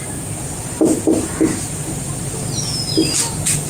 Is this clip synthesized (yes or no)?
no